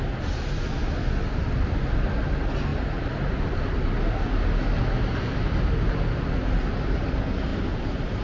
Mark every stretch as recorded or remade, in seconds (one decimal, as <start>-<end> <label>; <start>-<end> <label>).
0.0-8.2 recorded